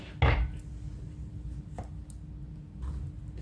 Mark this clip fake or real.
real